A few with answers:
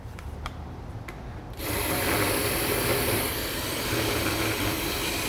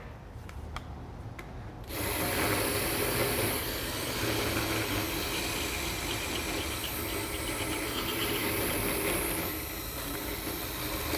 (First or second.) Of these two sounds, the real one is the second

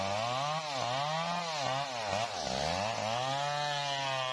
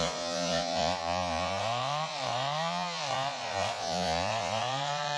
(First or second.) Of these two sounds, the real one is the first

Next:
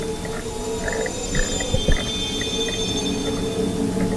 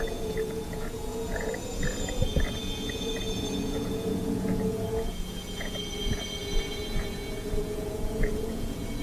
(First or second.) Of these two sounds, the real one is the first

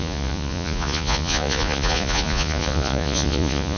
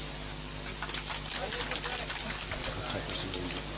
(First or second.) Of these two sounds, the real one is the second